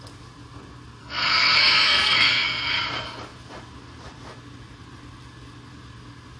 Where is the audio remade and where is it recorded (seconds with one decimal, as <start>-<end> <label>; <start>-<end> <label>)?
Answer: 0.0-1.0 recorded; 1.0-2.7 remade; 2.7-6.4 recorded